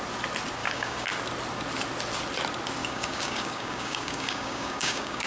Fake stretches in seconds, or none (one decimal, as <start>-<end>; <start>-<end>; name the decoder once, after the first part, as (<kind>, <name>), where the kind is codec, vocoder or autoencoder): 0.6-1.1 (codec, DAC); 2.8-5.3